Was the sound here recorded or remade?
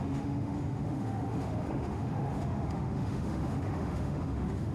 remade